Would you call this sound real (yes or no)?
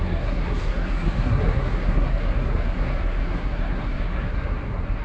no